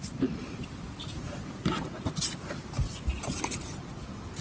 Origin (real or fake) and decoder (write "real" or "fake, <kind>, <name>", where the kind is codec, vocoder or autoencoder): real